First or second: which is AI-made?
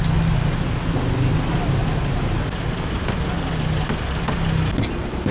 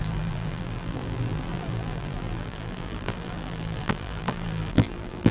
second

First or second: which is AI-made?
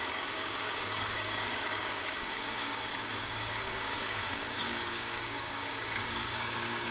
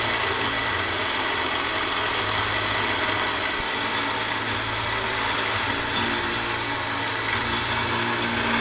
first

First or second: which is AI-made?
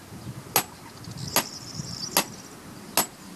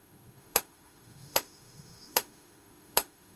second